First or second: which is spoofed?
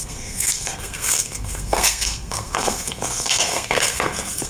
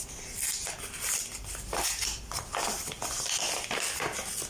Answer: first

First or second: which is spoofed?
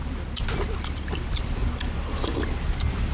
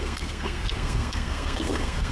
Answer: second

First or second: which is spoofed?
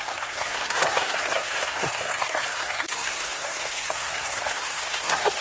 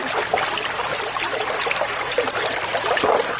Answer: first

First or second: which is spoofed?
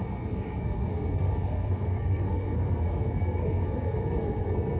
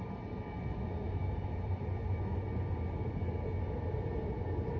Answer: first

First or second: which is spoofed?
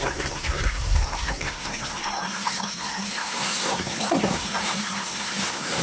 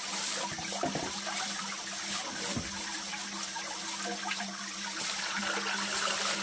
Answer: first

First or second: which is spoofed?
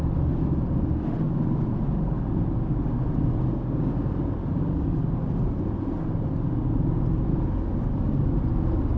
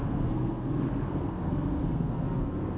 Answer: second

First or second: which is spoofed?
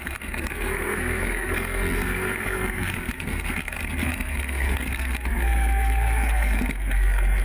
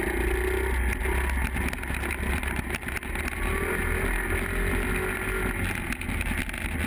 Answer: first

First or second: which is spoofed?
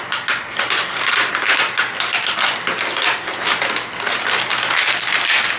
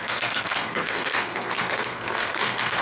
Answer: second